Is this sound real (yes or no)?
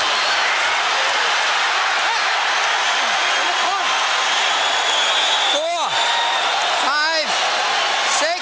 yes